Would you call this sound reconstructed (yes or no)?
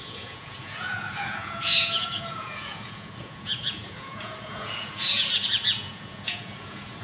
yes